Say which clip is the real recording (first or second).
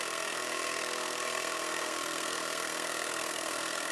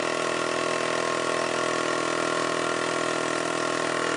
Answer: second